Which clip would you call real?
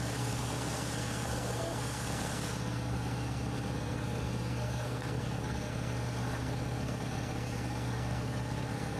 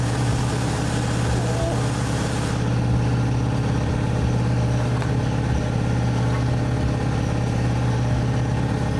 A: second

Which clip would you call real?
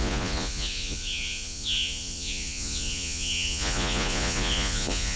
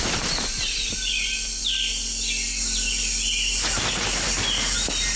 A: second